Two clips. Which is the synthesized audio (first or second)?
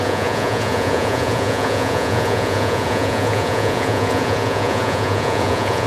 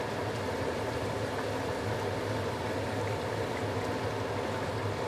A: first